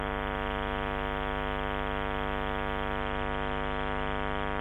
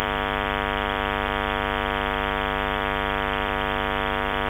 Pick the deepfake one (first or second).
second